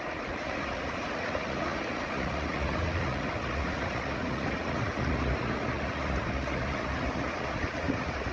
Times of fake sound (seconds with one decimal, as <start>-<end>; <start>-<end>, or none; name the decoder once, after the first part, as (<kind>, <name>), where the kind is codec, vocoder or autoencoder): 0.0-8.3 (vocoder, Vocos)